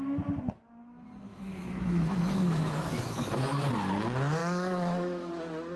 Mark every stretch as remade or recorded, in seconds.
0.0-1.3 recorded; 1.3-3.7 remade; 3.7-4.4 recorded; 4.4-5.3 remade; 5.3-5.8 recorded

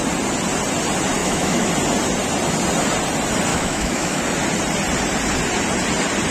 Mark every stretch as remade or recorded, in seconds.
0.0-1.2 recorded; 1.2-1.7 remade; 1.7-3.5 recorded; 3.5-4.2 remade; 4.2-6.3 recorded

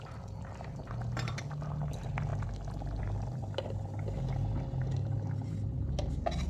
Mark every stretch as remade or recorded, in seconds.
0.0-6.5 recorded

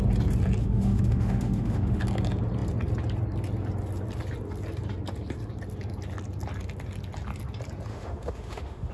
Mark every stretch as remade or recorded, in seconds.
0.0-0.6 recorded; 0.6-2.0 remade; 2.0-7.9 recorded; 7.9-8.9 remade

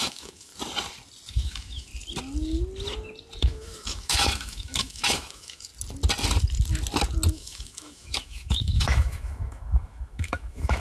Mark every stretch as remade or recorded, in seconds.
0.0-0.5 remade; 0.5-1.3 recorded; 1.3-1.9 remade; 1.9-3.4 recorded; 3.4-5.7 remade; 5.7-7.3 recorded; 7.3-10.8 remade

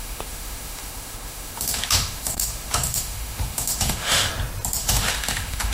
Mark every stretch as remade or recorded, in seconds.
0.0-4.3 remade; 4.3-4.8 recorded; 4.8-5.7 remade

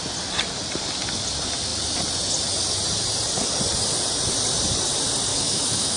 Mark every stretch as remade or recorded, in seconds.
0.0-5.3 recorded; 5.3-6.0 remade